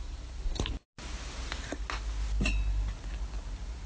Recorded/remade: recorded